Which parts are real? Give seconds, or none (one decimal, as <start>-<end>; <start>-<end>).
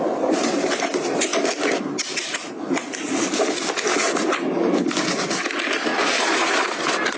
5.9-6.8